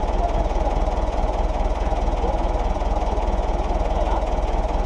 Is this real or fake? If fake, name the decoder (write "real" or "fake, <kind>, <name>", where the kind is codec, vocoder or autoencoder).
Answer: fake, vocoder, Vocos